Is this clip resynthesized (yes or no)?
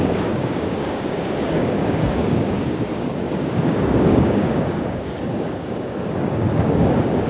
yes